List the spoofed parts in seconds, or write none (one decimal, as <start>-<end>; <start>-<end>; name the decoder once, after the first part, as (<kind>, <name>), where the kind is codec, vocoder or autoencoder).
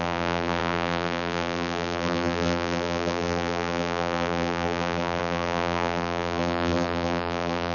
0.0-7.7 (vocoder, BigVGAN v2)